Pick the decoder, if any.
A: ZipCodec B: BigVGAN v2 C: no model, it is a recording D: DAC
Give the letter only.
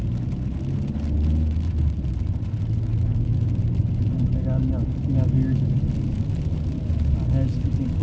C